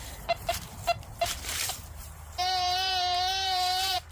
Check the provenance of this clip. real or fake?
fake